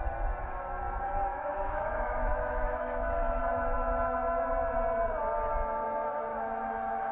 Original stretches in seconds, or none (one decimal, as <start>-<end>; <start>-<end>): 0.0-1.3; 3.4-6.3